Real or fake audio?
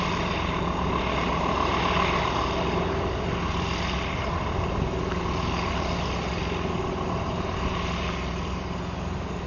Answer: real